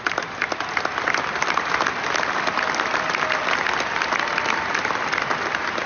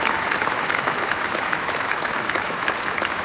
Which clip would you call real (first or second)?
first